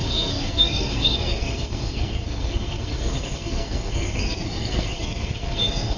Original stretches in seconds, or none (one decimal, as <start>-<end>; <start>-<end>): none